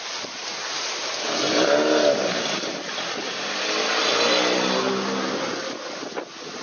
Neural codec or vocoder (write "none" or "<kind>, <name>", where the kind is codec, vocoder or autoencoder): none